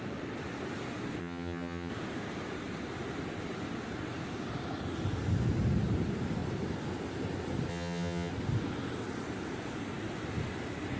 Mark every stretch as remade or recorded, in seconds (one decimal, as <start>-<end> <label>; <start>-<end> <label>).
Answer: 0.0-1.2 recorded; 1.2-1.9 remade; 1.9-7.7 recorded; 7.7-8.3 remade; 8.3-11.0 recorded